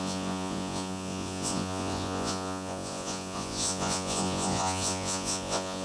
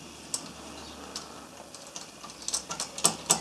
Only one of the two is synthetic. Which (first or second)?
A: first